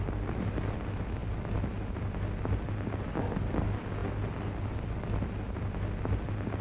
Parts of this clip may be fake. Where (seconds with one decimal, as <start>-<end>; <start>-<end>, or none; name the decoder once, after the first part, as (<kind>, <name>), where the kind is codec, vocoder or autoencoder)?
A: none